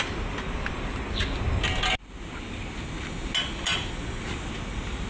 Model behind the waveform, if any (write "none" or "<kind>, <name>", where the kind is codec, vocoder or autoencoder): none